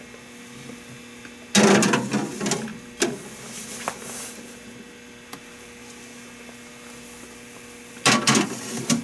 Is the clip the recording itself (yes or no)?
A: yes